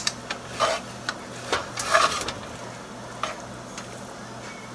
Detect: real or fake real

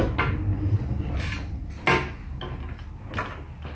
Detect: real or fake real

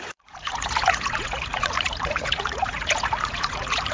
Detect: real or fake fake